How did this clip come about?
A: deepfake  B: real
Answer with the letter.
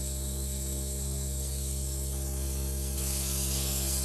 A